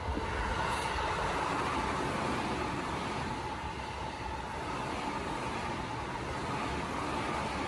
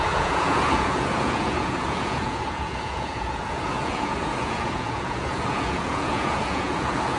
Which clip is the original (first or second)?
first